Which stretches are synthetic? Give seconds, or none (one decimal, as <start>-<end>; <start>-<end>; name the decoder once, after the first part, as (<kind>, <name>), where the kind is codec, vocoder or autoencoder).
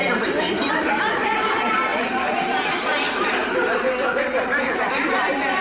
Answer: 0.0-1.9 (vocoder, BigVGAN v2); 4.6-5.6